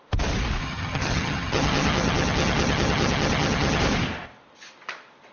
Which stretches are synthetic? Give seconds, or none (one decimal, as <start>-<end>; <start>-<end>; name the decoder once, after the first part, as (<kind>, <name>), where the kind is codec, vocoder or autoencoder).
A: 0.6-3.8 (vocoder, HiFi-GAN)